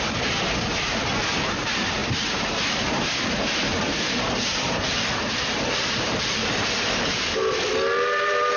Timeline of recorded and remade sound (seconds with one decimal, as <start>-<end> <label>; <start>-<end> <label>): 0.0-2.0 recorded; 2.0-3.1 remade; 3.1-3.7 recorded; 3.7-7.2 remade; 7.2-8.6 recorded